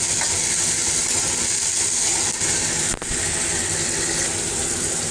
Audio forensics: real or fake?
real